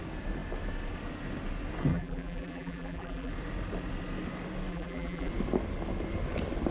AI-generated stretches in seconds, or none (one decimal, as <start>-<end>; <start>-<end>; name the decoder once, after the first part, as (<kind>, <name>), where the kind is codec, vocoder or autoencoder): 1.9-3.3 (vocoder, BigVGAN v2); 4.7-5.3